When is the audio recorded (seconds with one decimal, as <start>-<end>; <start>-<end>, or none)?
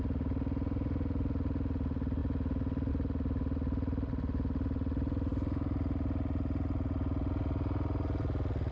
0.0-8.7